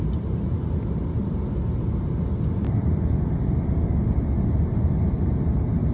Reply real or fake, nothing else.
real